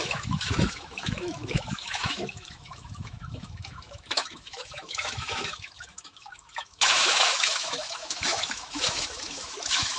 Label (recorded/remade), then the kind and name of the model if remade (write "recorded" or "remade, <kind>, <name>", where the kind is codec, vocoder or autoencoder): remade, autoencoder, DAC-VAE